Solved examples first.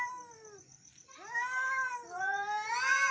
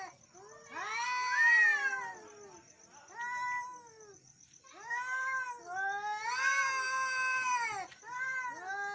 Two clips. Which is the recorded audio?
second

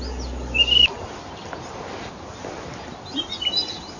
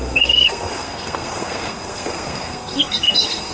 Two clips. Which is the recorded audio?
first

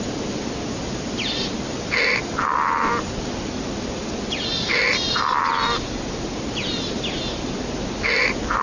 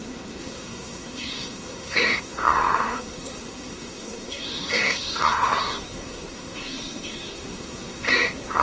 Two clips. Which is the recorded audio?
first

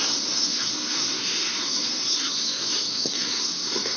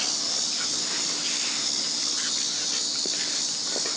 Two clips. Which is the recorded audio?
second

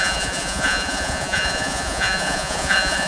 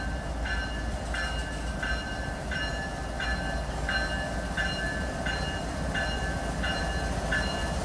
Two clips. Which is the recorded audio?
second